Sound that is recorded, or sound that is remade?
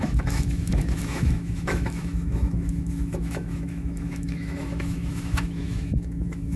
remade